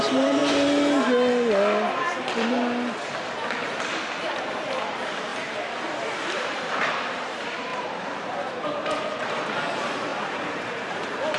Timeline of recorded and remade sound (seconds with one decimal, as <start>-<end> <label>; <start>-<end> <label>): 0.0-0.4 remade; 0.4-4.3 recorded; 4.3-5.3 remade; 5.3-6.3 recorded; 6.3-11.4 remade